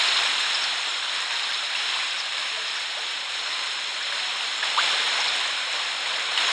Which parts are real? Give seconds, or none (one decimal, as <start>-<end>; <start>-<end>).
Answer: 0.0-2.9; 3.5-6.5